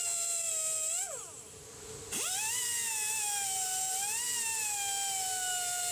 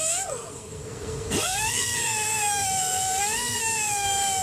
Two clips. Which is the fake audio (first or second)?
second